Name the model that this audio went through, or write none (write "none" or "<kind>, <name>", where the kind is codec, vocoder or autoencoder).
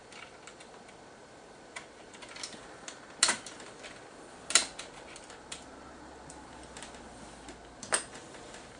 none